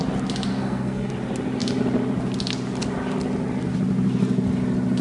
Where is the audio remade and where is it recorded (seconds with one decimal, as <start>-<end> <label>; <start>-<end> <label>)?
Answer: 0.0-0.5 recorded; 0.5-1.1 remade; 1.1-5.0 recorded